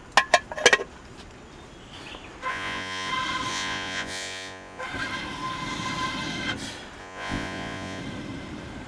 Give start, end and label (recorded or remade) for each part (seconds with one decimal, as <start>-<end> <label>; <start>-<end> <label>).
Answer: 0.0-2.5 recorded; 2.5-3.1 remade; 3.1-3.5 recorded; 3.5-4.8 remade; 4.8-7.0 recorded; 7.0-8.0 remade; 8.0-8.9 recorded